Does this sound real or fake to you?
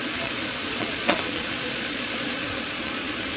fake